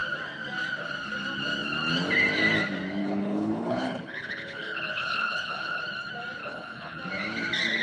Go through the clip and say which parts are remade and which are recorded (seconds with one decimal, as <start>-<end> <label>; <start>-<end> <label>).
0.0-3.0 recorded; 3.0-5.8 remade; 5.8-6.4 recorded; 6.4-7.0 remade; 7.0-7.8 recorded